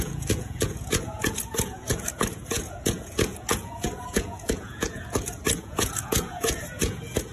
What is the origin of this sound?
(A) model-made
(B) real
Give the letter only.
A